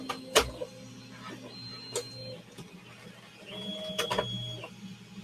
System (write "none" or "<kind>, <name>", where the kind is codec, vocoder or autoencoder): none